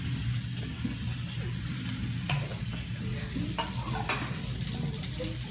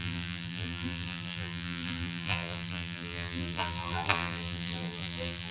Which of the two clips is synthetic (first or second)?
second